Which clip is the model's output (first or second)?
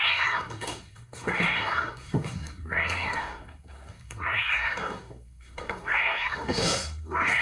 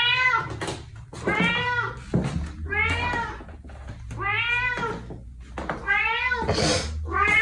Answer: first